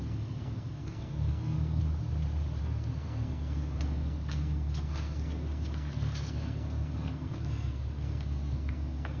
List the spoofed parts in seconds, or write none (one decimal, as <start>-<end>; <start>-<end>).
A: 0.0-1.8; 2.6-9.2